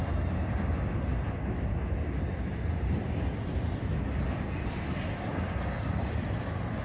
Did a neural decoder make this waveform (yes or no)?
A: no